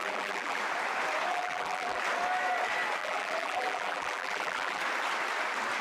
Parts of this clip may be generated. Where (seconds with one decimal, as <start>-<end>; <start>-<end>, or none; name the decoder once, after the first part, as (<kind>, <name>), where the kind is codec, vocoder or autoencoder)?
0.0-0.6 (vocoder, BigVGAN v2); 1.3-2.0; 3.0-4.8